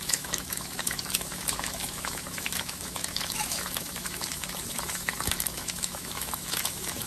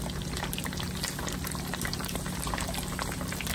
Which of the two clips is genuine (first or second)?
second